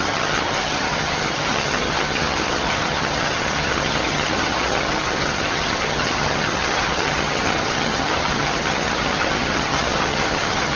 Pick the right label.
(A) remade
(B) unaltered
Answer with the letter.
A